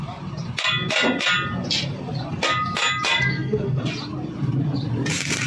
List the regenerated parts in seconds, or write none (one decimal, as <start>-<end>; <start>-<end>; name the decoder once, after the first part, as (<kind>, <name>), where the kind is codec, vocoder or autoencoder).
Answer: 3.2-3.8 (codec, SNAC)